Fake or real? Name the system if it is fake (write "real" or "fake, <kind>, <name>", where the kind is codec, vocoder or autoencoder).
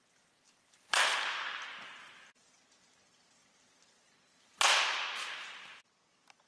real